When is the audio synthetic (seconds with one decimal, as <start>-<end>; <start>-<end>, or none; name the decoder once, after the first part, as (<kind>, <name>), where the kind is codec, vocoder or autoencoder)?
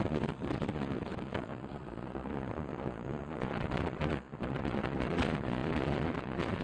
0.0-6.6 (vocoder, Vocos)